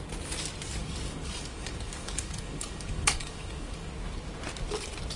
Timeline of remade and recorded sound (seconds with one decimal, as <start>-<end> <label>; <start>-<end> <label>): 0.0-0.8 recorded; 0.8-3.9 remade; 3.9-5.2 recorded